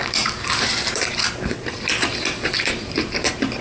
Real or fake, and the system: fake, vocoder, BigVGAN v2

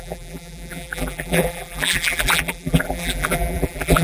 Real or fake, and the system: fake, vocoder, BigVGAN v2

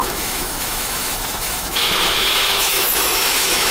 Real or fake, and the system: fake, autoencoder, DAC-VAE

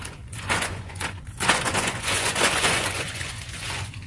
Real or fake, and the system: fake, vocoder, Vocos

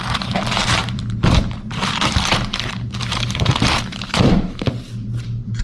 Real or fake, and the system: fake, vocoder, BigVGAN v2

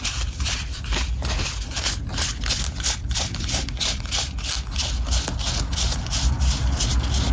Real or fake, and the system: real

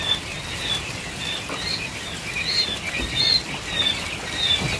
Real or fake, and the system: real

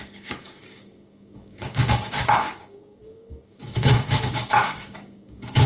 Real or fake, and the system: fake, codec, DAC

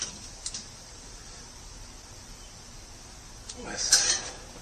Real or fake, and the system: fake, vocoder, BigVGAN v2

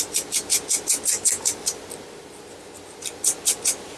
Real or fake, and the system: real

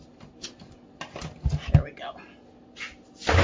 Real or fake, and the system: real